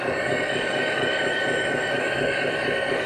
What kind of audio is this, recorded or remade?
remade